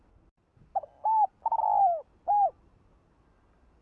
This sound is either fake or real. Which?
real